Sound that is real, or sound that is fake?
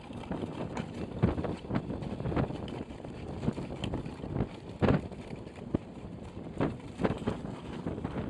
real